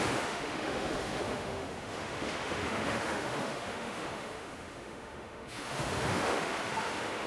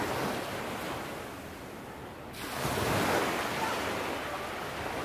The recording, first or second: second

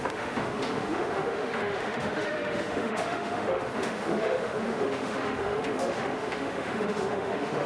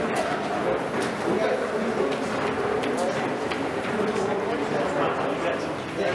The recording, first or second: second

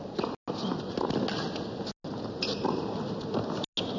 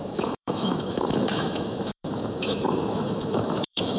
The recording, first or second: first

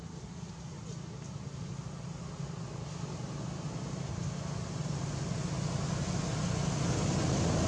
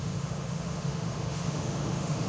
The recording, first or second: first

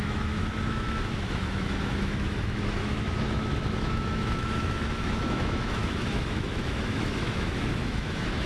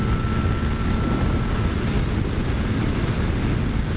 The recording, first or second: second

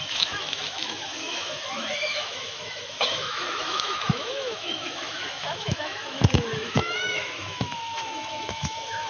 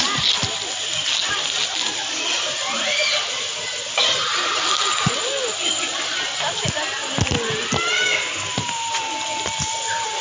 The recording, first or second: second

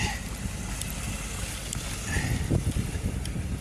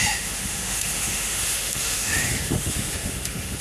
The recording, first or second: first